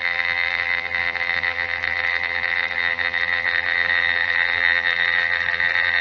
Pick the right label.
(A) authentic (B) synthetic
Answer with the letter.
B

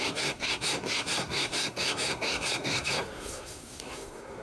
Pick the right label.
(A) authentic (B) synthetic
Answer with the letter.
B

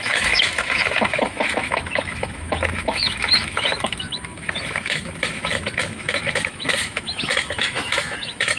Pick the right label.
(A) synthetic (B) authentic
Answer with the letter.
A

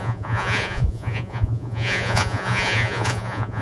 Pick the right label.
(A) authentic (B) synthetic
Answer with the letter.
B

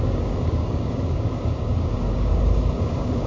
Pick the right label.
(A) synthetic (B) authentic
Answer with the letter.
A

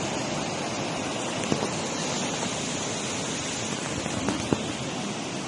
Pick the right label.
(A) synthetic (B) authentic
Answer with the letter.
B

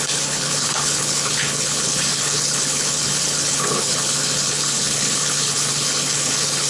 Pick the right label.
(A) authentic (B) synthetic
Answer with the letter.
B